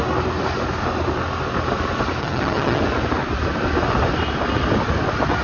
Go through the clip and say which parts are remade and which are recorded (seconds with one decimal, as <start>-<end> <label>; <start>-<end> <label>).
0.0-2.2 recorded; 2.2-2.8 remade; 2.8-5.4 recorded

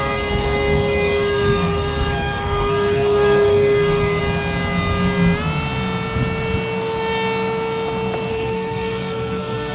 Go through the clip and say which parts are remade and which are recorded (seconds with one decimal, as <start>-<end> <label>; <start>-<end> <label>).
0.0-4.2 remade; 4.2-8.3 recorded; 8.3-9.7 remade

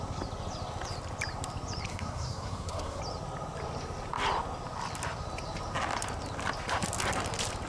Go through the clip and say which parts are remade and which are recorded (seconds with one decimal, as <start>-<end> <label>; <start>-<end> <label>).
0.0-1.9 recorded; 1.9-3.0 remade; 3.0-7.7 recorded

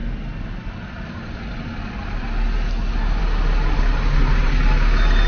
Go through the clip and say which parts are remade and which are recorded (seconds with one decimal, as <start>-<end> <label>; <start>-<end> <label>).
0.0-5.3 recorded

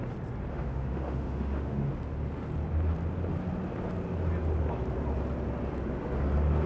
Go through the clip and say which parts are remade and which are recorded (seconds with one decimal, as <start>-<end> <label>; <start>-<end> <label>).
0.0-0.5 recorded; 0.5-1.9 remade; 1.9-6.7 recorded